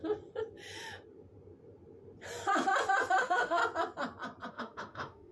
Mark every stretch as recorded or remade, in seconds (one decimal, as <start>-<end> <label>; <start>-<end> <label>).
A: 0.0-3.2 recorded; 3.2-3.6 remade; 3.6-4.5 recorded; 4.5-5.3 remade